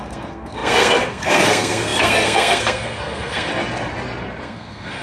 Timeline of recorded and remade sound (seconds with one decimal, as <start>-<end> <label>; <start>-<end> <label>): 0.0-3.5 remade; 3.5-4.4 recorded; 4.4-5.0 remade